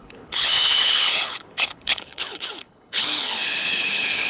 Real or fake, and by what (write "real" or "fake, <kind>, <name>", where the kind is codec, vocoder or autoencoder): fake, codec, HILCodec